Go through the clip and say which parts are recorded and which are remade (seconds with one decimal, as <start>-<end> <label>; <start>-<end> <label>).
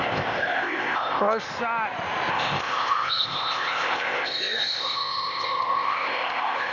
0.0-1.5 remade; 1.5-2.3 recorded; 2.3-6.7 remade